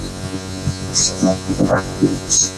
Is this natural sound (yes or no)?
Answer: no